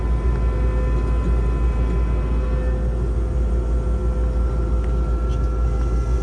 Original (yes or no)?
yes